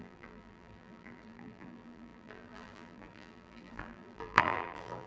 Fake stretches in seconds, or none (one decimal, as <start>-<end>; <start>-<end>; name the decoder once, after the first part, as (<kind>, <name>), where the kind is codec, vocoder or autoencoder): 0.0-5.1 (vocoder, BigVGAN v2)